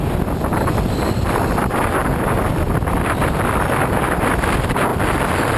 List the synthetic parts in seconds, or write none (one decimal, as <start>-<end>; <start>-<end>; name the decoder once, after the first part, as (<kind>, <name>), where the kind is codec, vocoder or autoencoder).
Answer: 0.5-1.1 (vocoder, BigVGAN v2); 2.0-4.2